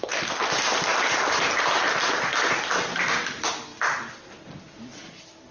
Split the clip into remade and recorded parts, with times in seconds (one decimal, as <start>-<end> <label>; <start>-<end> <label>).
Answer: 0.0-5.5 recorded

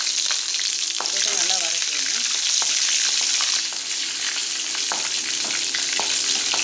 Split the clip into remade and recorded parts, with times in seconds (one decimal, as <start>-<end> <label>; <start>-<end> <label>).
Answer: 0.0-4.4 recorded; 4.4-5.3 remade; 5.3-6.6 recorded

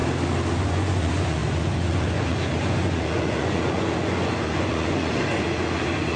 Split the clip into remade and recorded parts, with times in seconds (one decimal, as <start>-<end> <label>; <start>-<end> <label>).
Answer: 0.0-0.6 recorded; 0.6-6.2 remade